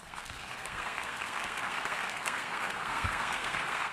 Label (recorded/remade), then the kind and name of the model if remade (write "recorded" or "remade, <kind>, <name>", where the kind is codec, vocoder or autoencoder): remade, codec, SNAC